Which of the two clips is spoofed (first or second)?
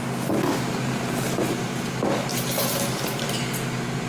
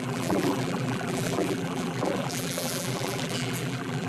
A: second